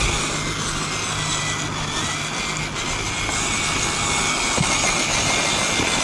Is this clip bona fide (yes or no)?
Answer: yes